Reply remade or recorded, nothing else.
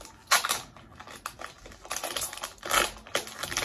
recorded